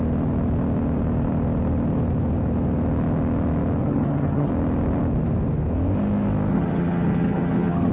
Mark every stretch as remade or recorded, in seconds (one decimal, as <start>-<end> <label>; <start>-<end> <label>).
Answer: 0.0-3.8 recorded; 3.8-4.5 remade; 4.5-6.5 recorded; 6.5-7.9 remade